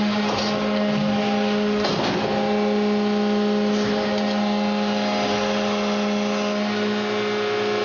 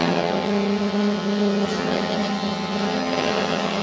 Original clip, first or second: first